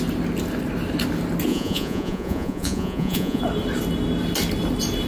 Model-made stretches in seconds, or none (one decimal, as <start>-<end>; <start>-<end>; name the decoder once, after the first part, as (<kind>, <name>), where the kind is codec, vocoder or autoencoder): 1.5-3.4 (vocoder, Vocos)